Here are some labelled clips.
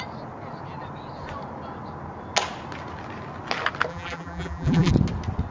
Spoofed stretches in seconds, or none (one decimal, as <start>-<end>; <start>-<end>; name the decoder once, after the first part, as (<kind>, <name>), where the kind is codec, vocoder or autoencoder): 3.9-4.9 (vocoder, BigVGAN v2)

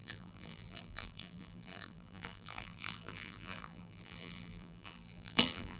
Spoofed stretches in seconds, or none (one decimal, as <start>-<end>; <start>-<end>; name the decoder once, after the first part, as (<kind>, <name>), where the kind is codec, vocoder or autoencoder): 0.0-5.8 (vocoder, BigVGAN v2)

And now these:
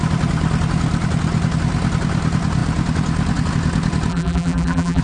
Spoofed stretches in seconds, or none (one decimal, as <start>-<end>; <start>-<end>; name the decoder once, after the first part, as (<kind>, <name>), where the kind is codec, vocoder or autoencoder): 4.1-5.0 (vocoder, BigVGAN v2)

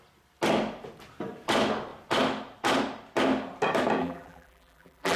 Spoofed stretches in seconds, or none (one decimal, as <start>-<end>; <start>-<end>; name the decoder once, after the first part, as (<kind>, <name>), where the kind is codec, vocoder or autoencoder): 4.0-5.2 (vocoder, BigVGAN v2)

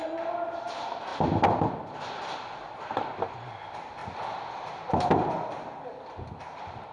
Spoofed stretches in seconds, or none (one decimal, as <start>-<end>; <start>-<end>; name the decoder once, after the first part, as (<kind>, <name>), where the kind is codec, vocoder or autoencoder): 4.0-4.7 (vocoder, BigVGAN v2)

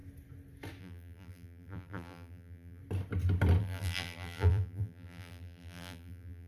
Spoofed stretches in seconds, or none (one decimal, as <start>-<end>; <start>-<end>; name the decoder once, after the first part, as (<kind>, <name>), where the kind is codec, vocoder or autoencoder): 0.8-2.8 (vocoder, BigVGAN v2); 3.6-6.5

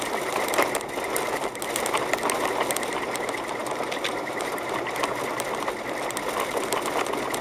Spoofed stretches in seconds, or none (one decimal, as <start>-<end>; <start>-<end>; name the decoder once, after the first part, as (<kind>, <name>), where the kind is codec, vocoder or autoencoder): 3.6-5.0 (vocoder, BigVGAN v2)